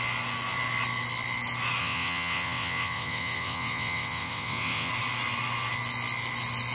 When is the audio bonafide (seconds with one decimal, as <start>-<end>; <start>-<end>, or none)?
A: 0.0-1.8; 4.9-6.7